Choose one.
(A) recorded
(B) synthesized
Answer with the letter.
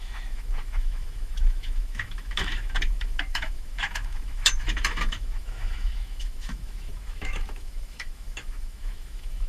B